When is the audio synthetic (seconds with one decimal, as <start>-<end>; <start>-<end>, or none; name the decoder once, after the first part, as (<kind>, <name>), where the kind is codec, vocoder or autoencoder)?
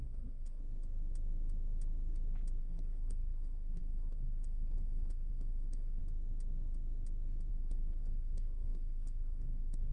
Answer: 0.0-0.6 (codec, SNAC); 2.6-6.0; 7.5-9.9